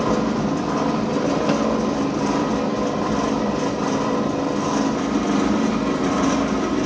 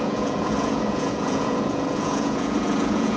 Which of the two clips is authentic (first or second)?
first